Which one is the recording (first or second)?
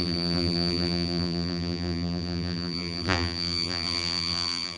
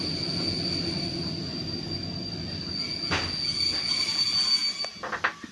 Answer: second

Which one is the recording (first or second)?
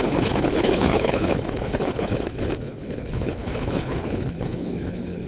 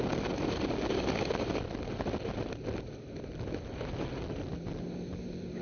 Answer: second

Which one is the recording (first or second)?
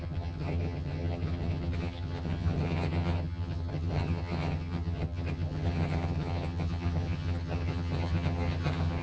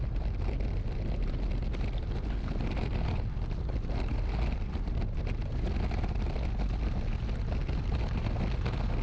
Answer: second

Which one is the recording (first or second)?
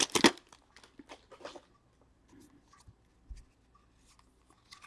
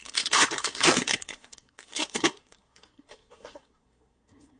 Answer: first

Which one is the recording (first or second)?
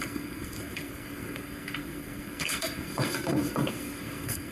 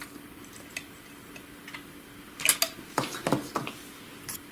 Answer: second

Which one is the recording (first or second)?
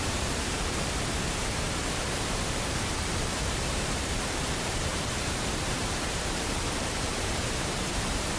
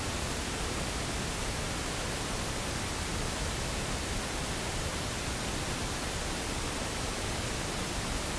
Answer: second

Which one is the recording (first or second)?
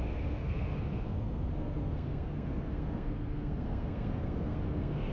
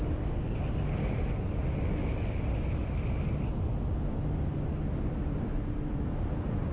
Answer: second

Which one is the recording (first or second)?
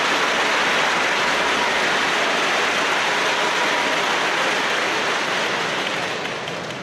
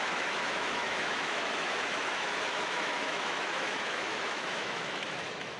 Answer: first